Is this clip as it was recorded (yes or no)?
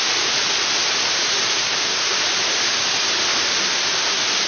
yes